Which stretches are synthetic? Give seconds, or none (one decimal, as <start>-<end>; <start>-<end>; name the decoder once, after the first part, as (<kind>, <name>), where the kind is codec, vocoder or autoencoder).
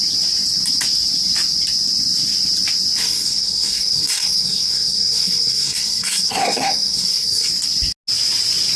3.0-7.5 (codec, SNAC)